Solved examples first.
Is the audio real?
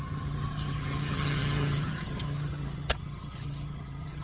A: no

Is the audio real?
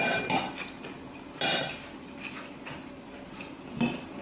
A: yes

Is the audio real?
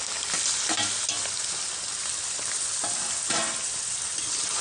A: yes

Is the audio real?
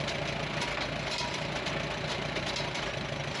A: yes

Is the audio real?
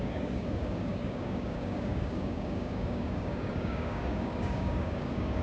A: no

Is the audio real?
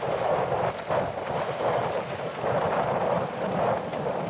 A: yes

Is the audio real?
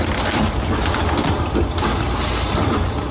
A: no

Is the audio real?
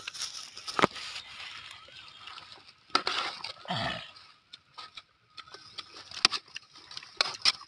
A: yes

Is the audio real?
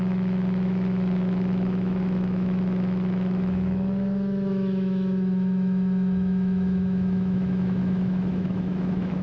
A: no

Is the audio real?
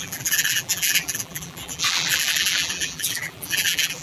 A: no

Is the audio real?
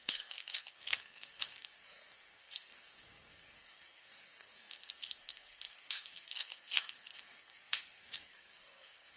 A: no